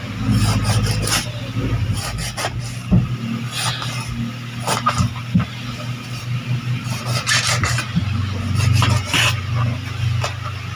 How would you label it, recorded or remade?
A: recorded